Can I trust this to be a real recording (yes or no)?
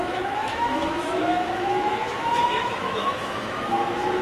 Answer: no